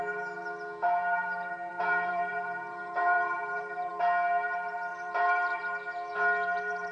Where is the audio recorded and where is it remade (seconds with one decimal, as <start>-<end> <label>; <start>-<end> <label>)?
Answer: 0.0-1.7 recorded; 1.7-3.9 remade; 3.9-4.9 recorded; 4.9-5.6 remade; 5.6-6.9 recorded